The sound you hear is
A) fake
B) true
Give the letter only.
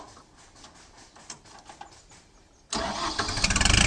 B